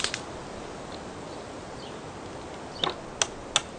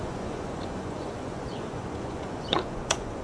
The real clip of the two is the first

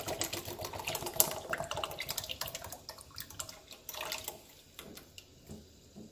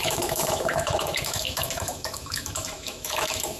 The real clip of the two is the first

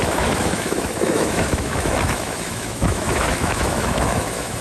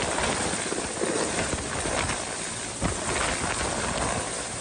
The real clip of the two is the second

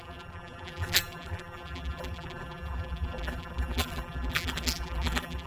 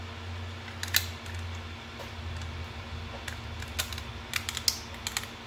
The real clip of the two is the second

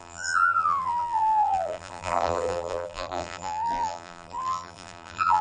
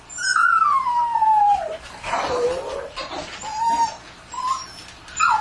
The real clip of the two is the second